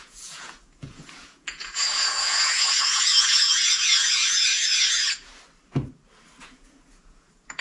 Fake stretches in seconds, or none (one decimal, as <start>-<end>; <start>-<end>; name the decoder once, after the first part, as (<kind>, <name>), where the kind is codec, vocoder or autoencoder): 0.0-5.3 (vocoder, Vocos); 6.4-7.6